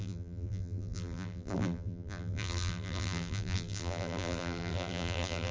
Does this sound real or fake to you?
fake